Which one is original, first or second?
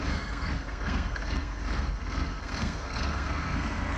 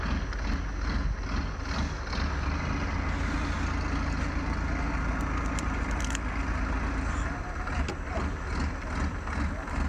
second